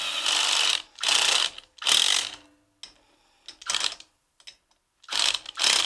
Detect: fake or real real